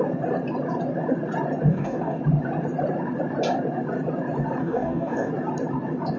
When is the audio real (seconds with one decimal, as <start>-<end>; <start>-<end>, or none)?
0.0-1.7; 2.2-4.6; 5.3-6.2